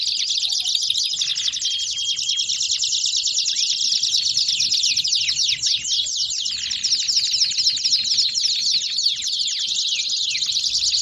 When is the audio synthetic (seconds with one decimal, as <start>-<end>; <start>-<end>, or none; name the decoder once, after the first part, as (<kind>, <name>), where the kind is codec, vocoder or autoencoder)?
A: none